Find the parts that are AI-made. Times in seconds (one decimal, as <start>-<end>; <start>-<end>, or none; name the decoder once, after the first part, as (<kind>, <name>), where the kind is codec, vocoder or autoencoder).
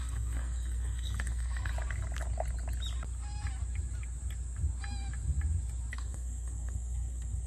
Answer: 0.0-1.7 (codec, SNAC); 5.9-7.5